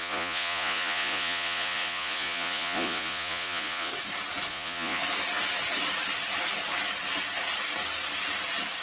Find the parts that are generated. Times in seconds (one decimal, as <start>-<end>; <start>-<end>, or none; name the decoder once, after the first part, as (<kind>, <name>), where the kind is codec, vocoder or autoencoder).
0.0-3.9 (vocoder, Vocos); 4.5-5.0